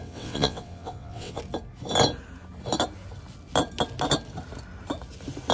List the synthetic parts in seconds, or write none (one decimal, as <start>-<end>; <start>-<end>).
0.0-1.4